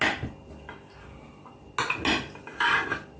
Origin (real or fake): real